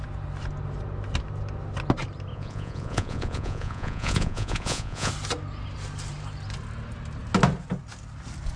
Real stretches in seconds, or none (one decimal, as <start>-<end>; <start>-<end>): 0.0-2.3; 5.1-8.6